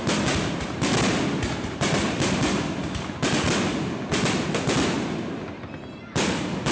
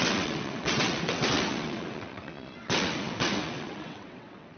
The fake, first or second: second